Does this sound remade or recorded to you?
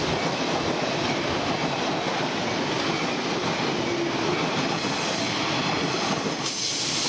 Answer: recorded